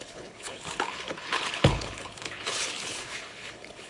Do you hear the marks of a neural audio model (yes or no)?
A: yes